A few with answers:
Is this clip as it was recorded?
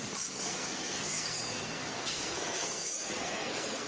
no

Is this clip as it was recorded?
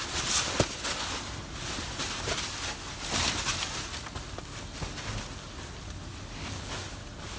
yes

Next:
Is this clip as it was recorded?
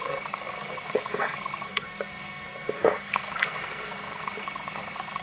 no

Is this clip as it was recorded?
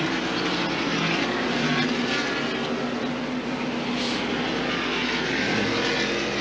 yes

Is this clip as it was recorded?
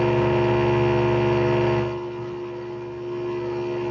yes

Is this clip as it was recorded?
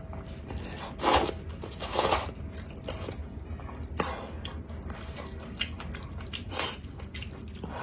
yes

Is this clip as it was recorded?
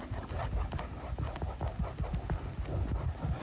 yes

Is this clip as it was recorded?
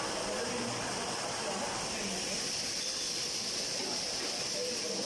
yes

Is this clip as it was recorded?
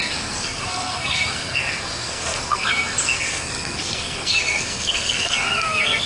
no